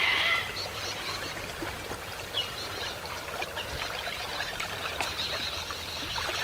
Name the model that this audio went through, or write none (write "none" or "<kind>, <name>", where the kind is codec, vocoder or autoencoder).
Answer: vocoder, BigVGAN v2